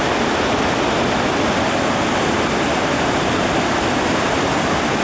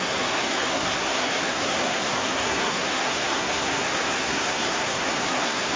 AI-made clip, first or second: second